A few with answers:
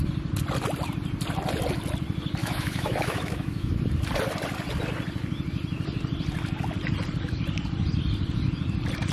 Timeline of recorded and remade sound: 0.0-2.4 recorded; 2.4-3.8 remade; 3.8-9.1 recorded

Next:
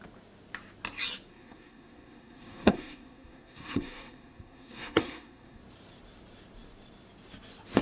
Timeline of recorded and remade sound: 0.0-1.3 recorded; 1.3-5.6 remade; 5.6-7.8 recorded

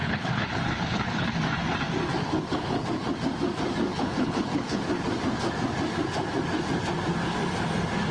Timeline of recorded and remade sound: 0.0-1.4 remade; 1.4-2.2 recorded; 2.2-3.1 remade; 3.1-3.9 recorded; 3.9-4.8 remade; 4.8-8.1 recorded

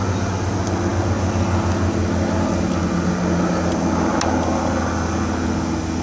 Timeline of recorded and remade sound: 0.0-6.0 recorded

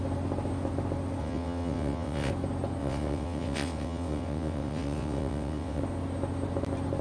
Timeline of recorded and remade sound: 0.0-1.2 recorded; 1.2-2.3 remade; 2.3-2.8 recorded; 2.8-5.8 remade; 5.8-7.0 recorded

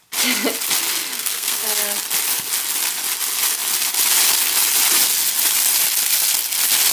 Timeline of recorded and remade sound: 0.0-1.1 recorded; 1.1-1.8 remade; 1.8-6.9 recorded

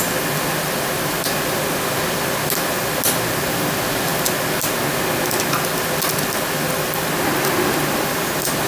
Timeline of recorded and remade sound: 0.0-8.7 recorded